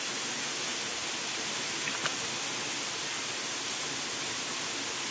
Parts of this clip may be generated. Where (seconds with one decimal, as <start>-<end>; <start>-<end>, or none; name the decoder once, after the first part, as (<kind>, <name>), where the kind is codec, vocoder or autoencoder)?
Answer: none